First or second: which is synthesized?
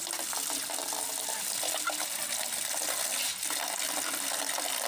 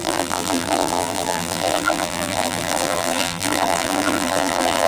second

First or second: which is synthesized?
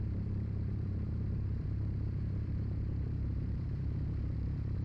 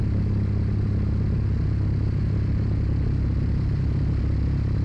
first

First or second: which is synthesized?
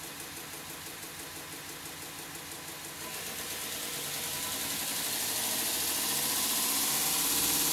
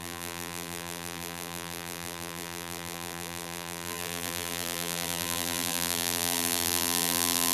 second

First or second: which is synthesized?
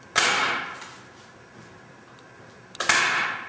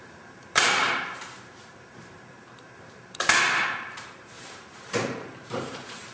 second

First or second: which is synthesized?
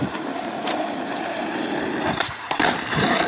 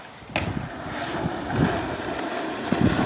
first